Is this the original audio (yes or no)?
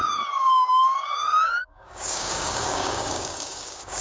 no